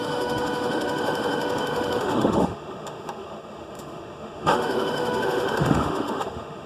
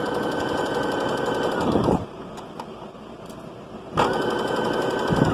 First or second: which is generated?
first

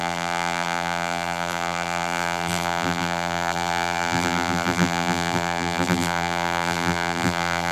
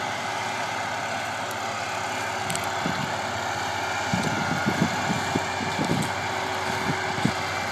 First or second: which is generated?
first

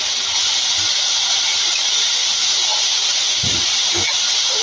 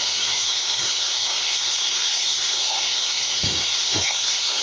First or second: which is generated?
second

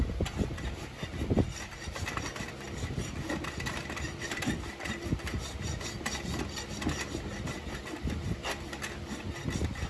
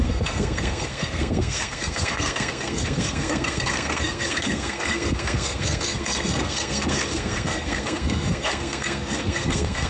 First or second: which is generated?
second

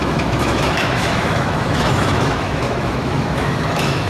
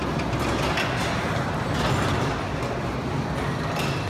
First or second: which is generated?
first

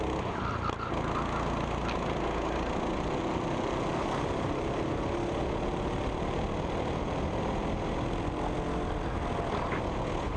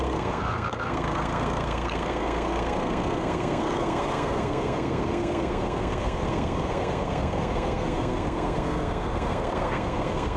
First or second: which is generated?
second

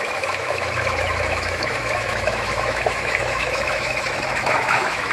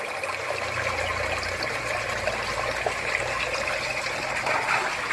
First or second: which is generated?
first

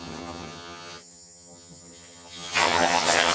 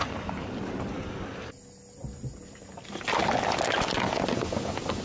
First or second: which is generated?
first